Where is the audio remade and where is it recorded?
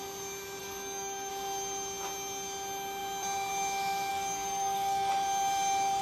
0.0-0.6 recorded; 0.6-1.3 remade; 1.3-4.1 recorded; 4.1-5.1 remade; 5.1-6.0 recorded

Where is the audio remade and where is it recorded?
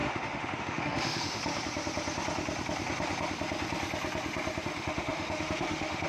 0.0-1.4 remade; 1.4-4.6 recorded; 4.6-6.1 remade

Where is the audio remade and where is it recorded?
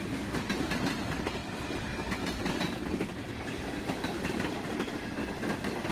0.0-1.4 remade; 1.4-2.3 recorded; 2.3-5.2 remade; 5.2-5.9 recorded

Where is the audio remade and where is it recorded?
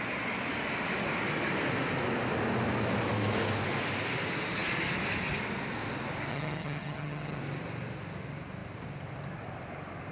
0.0-6.3 recorded; 6.3-7.4 remade; 7.4-10.1 recorded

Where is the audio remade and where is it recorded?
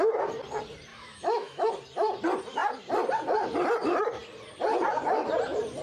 0.0-0.9 recorded; 0.9-1.7 remade; 1.7-5.8 recorded